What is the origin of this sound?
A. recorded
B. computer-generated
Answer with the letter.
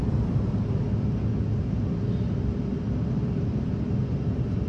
A